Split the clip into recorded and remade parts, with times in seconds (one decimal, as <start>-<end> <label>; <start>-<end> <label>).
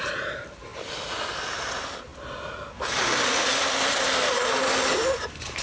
0.0-5.6 recorded